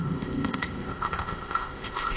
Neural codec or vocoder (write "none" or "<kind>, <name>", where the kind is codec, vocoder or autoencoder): codec, ZipCodec